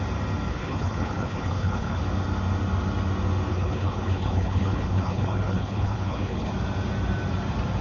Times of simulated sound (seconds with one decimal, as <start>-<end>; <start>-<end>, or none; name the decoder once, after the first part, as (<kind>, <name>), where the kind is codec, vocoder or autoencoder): 0.5-2.0 (codec, HILCodec); 3.5-6.5

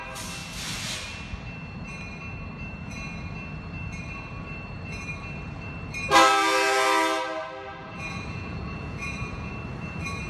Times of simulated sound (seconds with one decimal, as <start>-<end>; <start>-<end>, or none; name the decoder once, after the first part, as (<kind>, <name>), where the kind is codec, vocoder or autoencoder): 7.8-9.5 (vocoder, Vocos)

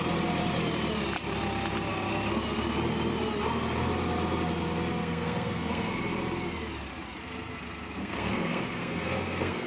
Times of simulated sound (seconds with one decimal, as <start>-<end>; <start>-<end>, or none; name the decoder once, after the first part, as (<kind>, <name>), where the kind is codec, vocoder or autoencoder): 5.0-6.0 (codec, SNAC); 8.0-9.7

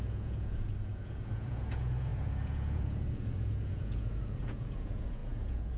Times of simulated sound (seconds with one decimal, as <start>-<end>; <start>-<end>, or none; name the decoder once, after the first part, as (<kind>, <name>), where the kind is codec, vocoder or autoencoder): 0.0-5.8 (vocoder, Vocos)

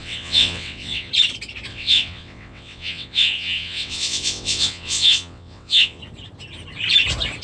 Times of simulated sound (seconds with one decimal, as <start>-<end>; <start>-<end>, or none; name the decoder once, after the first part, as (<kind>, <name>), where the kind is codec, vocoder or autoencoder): 0.0-1.1 (vocoder, WaveNeXt); 1.7-6.0

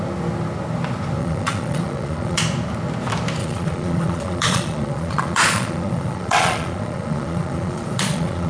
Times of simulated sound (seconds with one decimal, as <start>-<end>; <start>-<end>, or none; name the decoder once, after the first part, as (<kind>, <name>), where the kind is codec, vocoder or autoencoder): 1.2-2.4 (vocoder, Vocos); 3.4-8.5